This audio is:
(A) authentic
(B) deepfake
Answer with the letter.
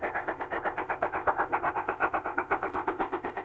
B